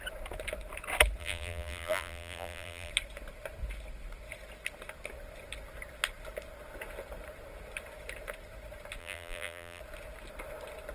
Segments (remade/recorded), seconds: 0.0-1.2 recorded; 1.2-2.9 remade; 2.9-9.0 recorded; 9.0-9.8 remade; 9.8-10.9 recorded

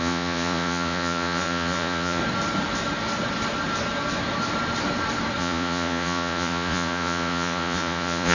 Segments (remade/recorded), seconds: 0.0-2.2 remade; 2.2-5.4 recorded; 5.4-8.3 remade

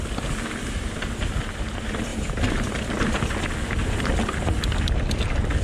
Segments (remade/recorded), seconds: 0.0-5.6 recorded

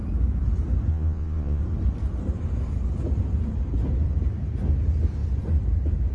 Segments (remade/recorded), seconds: 0.0-0.9 recorded; 0.9-1.6 remade; 1.6-6.1 recorded

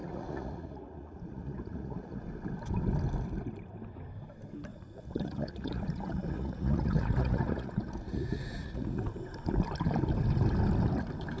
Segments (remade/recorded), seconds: 0.0-2.2 remade; 2.2-4.7 recorded; 4.7-9.0 remade; 9.0-11.4 recorded

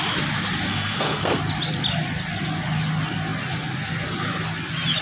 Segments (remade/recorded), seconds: 0.0-0.7 recorded; 0.7-1.4 remade; 1.4-5.0 recorded

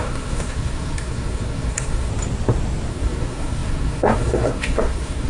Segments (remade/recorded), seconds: 0.0-2.1 remade; 2.1-2.9 recorded; 2.9-5.3 remade

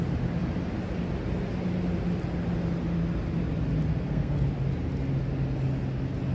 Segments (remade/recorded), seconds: 0.0-3.9 recorded; 3.9-4.5 remade; 4.5-6.3 recorded